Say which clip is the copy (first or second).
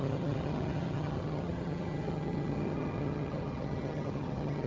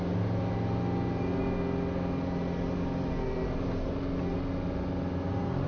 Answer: first